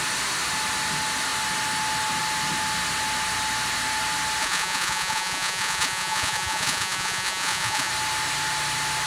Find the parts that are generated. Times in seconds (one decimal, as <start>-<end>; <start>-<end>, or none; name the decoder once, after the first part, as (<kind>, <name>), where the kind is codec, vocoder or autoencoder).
4.4-7.9 (vocoder, Vocos)